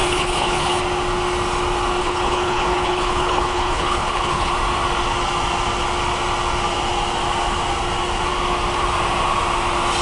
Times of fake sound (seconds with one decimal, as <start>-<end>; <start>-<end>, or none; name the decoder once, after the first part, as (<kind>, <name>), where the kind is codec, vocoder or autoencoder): 0.0-0.8 (codec, HILCodec); 2.0-4.5